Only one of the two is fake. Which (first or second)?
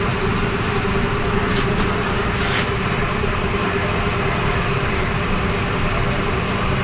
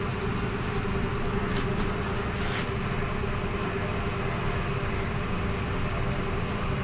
first